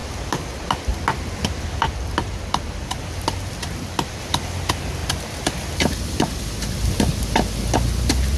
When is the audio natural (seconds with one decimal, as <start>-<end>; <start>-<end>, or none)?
4.5-8.4